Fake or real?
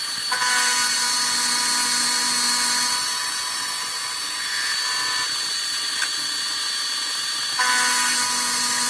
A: real